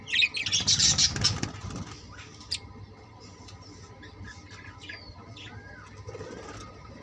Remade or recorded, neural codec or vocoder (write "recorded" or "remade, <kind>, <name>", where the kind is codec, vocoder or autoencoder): recorded